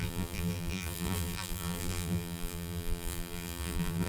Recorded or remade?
remade